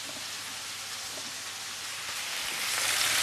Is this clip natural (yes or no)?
yes